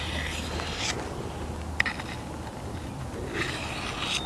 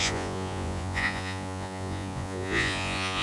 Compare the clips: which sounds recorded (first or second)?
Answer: first